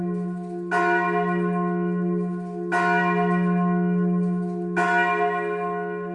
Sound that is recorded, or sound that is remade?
recorded